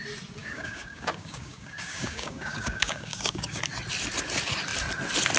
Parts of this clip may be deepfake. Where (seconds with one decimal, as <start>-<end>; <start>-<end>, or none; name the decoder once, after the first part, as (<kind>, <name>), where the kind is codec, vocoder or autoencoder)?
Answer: 0.4-3.6 (codec, DAC)